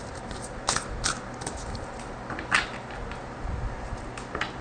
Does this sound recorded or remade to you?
recorded